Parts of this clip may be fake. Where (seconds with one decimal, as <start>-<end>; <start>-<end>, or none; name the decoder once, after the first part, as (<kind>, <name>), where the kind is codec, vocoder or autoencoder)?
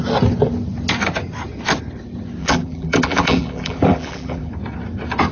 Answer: 2.4-4.5 (vocoder, BigVGAN v2)